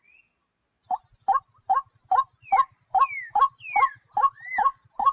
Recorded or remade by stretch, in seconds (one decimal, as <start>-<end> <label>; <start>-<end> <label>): 0.0-5.1 recorded